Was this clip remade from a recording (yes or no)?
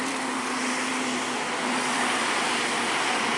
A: yes